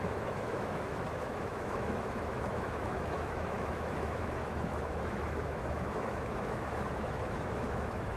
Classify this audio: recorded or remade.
remade